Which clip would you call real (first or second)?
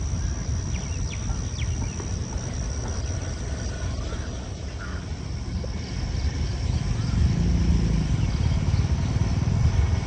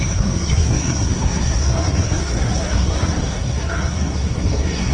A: first